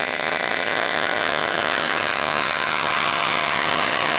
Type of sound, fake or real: fake